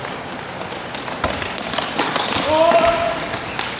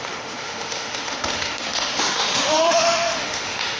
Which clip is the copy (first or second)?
second